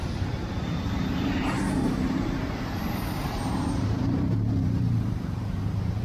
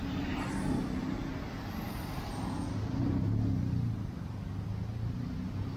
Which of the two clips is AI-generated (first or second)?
first